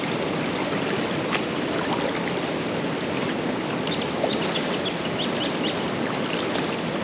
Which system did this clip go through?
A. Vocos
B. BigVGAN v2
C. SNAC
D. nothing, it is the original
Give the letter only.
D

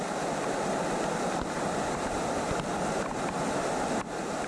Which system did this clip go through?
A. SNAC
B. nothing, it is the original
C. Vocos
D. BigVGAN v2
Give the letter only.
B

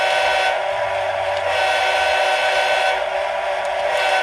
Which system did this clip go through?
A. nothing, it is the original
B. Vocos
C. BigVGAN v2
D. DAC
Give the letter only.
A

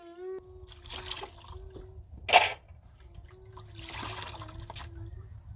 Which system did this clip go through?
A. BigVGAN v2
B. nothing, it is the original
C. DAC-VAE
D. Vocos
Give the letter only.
B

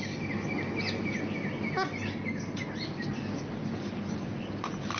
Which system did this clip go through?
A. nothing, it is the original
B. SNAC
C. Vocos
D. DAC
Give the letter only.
A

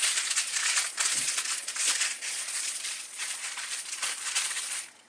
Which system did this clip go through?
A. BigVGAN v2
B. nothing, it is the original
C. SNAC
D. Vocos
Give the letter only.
D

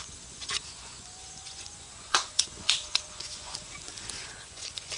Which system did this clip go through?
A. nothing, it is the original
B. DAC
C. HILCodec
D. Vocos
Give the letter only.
D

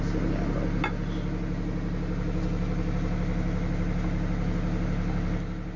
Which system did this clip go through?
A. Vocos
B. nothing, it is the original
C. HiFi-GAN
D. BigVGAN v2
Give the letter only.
B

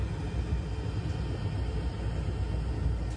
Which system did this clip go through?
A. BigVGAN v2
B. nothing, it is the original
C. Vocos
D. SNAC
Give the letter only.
B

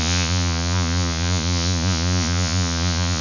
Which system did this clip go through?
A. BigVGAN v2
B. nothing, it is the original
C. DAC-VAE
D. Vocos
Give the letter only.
D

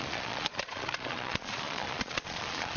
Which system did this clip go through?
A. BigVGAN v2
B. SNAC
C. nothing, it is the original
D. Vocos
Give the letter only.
D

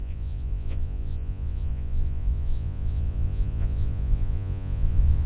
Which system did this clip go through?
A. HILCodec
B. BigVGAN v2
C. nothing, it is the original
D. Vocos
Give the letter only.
D